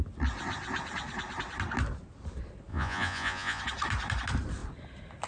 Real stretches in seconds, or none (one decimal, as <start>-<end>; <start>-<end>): 0.0-2.7; 3.6-5.3